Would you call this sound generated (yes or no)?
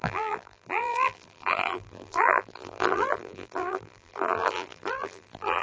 yes